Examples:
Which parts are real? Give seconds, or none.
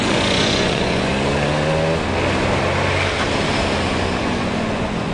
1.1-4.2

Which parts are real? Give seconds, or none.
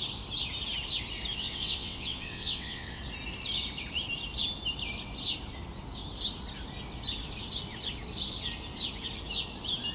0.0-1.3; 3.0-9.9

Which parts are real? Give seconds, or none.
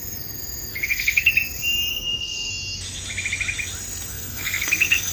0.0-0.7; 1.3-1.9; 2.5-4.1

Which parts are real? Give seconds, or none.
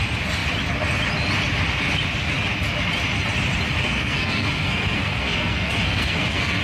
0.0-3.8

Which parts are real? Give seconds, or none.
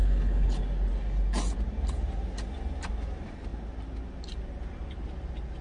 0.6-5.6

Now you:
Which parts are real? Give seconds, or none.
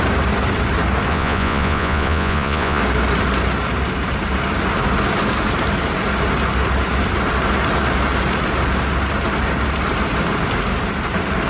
0.0-1.1; 2.8-11.5